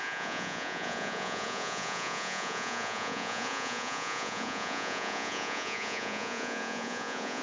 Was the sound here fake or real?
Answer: fake